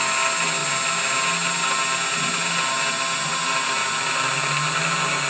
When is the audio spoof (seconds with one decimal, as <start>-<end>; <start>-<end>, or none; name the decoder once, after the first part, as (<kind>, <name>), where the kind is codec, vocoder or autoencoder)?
none